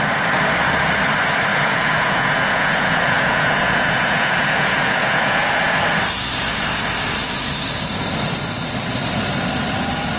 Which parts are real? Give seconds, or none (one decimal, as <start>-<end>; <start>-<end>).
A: 0.0-1.5; 5.8-10.2